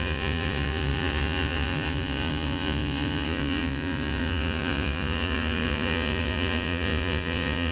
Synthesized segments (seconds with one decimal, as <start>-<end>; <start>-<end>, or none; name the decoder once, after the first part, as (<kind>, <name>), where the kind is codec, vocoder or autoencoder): 0.0-7.7 (vocoder, Vocos)